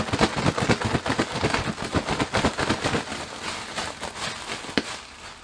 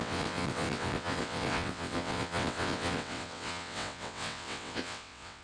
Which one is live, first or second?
first